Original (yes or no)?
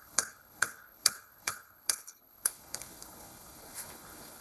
no